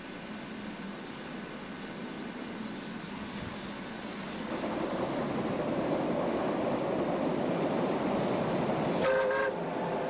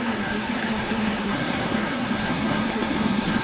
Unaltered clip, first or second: first